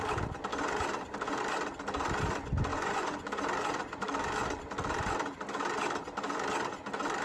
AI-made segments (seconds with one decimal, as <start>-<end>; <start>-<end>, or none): 2.7-3.3